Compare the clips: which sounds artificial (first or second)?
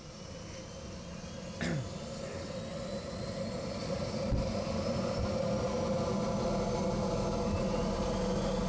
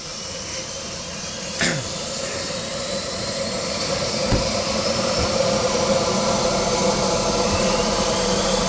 second